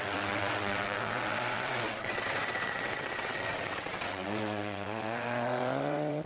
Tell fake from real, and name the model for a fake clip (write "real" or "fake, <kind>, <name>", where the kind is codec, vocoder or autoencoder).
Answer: fake, vocoder, WaveNeXt